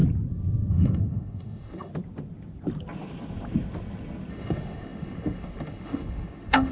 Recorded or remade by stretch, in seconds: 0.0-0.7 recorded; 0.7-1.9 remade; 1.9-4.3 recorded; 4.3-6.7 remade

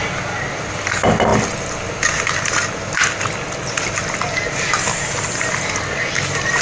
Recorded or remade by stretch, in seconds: 0.0-6.6 recorded